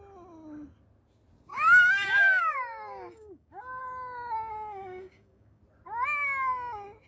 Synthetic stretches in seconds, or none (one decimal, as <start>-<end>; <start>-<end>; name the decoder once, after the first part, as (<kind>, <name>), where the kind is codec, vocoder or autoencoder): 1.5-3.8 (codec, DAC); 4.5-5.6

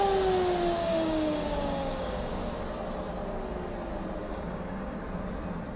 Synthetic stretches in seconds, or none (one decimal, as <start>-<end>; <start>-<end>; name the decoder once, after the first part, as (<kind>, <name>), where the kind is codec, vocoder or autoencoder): 0.8-2.3 (codec, DAC); 4.2-5.0

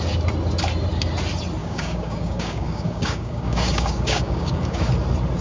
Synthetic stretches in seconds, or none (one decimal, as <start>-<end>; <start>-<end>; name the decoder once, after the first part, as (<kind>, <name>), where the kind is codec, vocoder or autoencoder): 1.6-4.8 (codec, DAC)